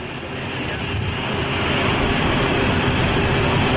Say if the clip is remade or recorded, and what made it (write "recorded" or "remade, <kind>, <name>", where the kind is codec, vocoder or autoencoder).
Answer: recorded